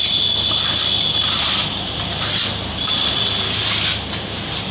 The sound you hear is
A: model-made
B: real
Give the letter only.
B